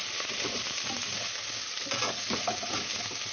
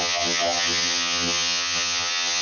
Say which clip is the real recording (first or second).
first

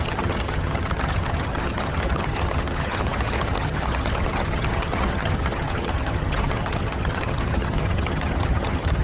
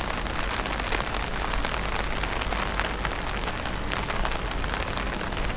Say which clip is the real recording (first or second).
second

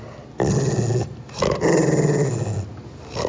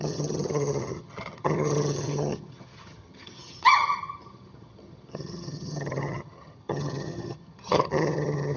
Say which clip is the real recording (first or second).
first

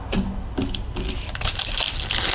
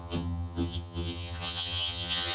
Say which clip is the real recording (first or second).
first